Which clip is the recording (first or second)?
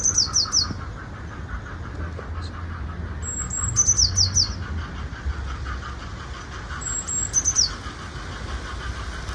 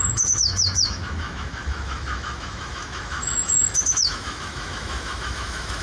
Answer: first